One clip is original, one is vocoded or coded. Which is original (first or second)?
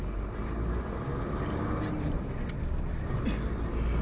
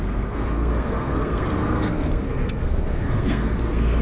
first